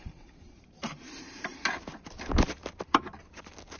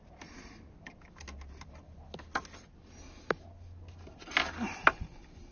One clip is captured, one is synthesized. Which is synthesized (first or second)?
first